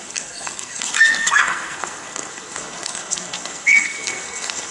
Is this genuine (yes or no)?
no